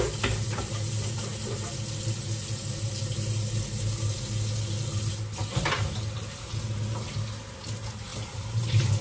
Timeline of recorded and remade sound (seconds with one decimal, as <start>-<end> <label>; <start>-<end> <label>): 0.0-9.0 recorded